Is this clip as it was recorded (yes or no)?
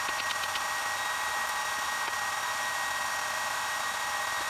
yes